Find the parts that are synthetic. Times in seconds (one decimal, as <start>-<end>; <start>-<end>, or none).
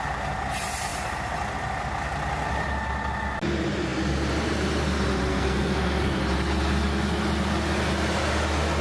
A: 5.3-6.2